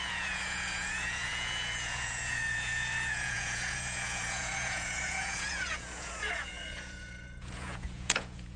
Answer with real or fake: fake